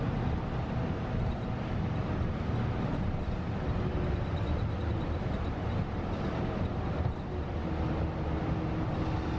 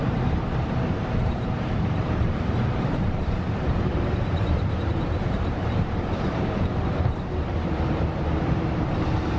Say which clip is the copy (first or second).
second